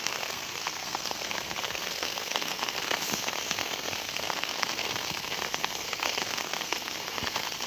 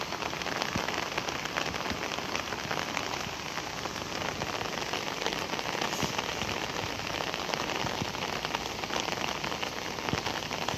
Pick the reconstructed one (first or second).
first